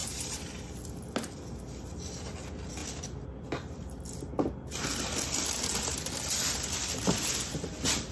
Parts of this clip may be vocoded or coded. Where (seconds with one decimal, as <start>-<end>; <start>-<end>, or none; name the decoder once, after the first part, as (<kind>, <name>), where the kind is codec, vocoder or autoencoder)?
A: none